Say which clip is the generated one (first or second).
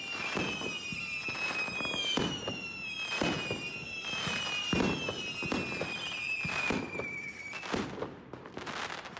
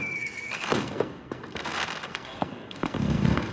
second